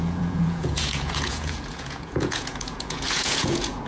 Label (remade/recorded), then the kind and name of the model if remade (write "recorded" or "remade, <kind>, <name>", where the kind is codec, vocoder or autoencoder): remade, vocoder, Vocos